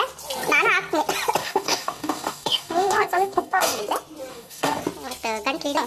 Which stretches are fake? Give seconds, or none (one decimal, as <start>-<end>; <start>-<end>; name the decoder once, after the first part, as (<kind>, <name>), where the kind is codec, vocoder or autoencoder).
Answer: 1.4-3.8 (codec, DAC); 4.3-4.8